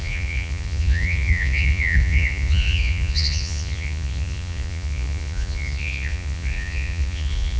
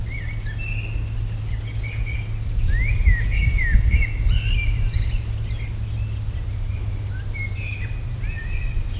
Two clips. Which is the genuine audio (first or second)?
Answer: second